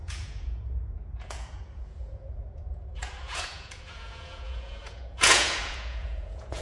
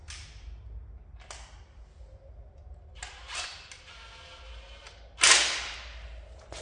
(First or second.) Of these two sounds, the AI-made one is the first